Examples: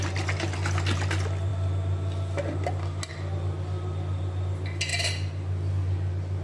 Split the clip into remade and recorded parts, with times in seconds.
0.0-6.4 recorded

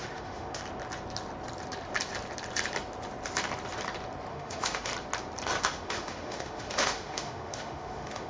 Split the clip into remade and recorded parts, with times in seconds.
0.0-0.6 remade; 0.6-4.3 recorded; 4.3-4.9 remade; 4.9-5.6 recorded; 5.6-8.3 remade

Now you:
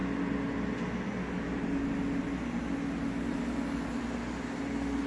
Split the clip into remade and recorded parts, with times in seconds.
0.0-5.1 recorded